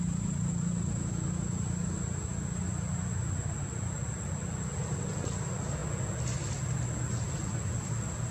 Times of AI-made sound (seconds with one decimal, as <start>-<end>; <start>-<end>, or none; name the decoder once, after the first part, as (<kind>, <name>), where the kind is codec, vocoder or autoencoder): none